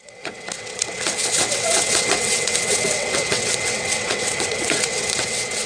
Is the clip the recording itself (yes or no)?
no